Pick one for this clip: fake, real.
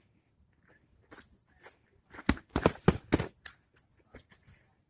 real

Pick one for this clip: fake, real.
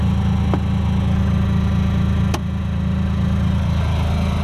real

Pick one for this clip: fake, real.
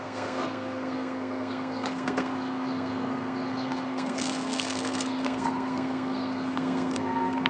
fake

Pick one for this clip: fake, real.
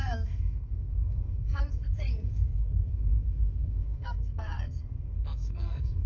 fake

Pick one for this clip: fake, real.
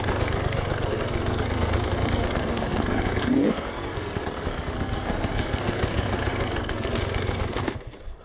fake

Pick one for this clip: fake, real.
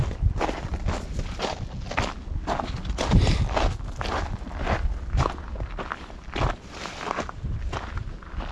real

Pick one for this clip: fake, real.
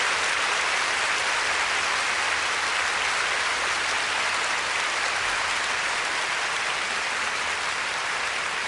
real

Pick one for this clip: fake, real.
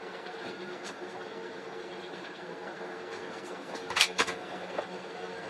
fake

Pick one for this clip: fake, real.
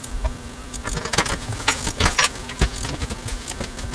real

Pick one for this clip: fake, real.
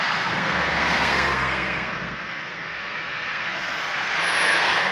fake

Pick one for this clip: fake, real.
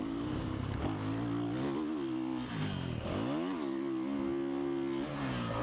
real